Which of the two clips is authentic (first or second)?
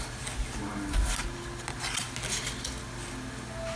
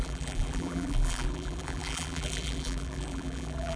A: first